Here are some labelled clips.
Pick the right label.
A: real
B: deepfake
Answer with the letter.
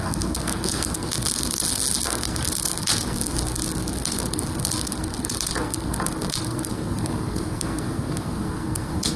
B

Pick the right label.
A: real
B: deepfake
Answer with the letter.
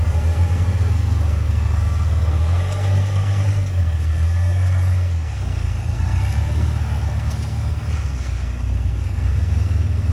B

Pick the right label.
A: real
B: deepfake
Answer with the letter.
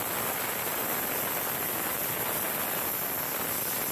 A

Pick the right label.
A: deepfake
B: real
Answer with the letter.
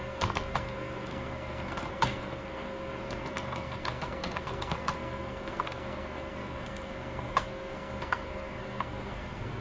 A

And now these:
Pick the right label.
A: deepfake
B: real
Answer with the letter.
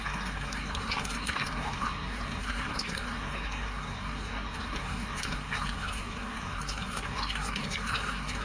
A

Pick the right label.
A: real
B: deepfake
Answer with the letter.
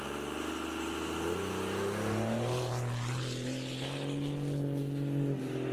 A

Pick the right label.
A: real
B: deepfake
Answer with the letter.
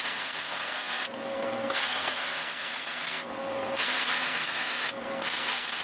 B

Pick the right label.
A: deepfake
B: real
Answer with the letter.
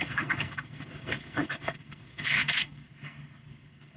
A